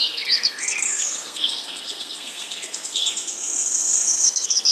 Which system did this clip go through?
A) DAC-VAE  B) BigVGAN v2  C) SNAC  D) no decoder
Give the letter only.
C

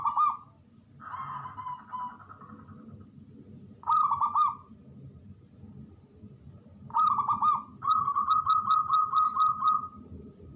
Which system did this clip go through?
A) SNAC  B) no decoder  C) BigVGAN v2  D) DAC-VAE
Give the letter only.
B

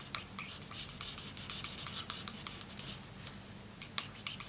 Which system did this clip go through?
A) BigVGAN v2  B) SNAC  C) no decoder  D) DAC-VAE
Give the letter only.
C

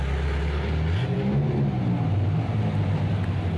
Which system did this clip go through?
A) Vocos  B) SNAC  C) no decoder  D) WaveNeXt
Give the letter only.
C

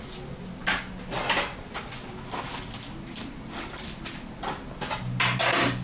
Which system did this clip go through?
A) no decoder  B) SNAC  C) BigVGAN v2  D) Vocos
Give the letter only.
A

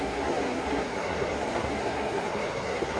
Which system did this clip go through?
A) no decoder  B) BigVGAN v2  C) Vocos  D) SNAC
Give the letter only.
D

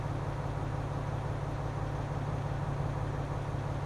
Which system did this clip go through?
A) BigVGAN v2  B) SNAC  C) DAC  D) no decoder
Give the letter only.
D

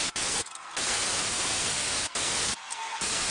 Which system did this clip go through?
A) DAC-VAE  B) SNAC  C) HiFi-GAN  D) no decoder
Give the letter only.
B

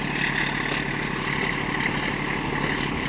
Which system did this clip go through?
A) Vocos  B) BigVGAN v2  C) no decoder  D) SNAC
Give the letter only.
C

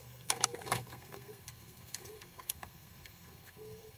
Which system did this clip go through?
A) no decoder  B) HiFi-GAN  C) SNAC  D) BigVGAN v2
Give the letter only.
C